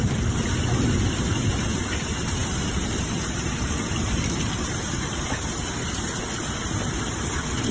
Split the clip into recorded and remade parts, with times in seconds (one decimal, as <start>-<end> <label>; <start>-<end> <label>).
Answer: 0.0-7.7 remade